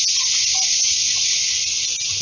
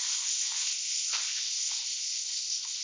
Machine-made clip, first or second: second